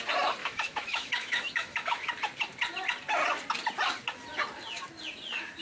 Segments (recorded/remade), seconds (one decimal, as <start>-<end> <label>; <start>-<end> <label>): 0.0-0.4 recorded; 0.4-2.1 remade; 2.1-5.6 recorded